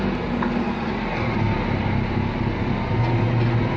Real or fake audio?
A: real